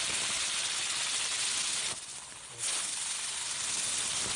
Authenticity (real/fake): real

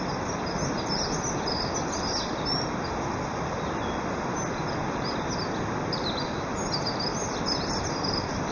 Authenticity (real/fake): real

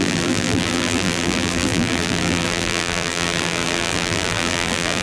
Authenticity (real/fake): fake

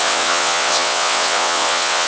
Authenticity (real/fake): fake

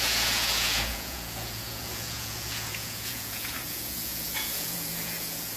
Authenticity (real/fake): fake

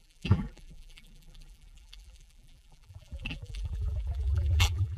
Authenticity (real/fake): fake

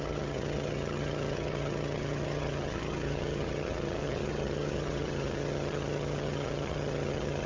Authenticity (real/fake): fake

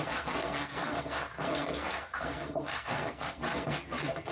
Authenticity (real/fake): fake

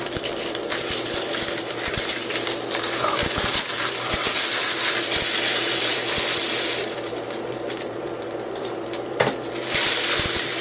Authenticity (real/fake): fake